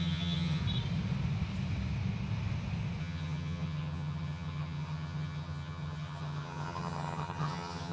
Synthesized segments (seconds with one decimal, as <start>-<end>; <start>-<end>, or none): 0.0-0.6; 3.0-7.9